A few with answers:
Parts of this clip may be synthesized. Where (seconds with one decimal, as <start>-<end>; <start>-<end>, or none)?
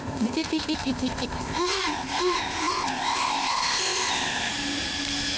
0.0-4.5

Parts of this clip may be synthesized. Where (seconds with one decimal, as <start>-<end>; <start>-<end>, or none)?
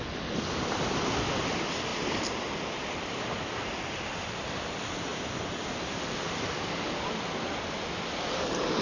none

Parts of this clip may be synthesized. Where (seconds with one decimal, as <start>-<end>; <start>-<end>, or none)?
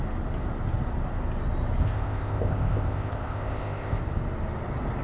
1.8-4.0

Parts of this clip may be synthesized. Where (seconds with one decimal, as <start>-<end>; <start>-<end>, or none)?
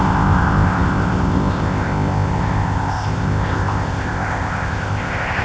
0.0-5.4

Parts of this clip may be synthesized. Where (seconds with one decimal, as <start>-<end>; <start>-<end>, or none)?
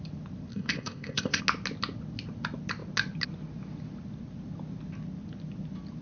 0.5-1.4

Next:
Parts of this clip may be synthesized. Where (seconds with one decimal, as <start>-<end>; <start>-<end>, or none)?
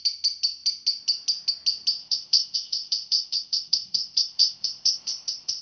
2.0-5.6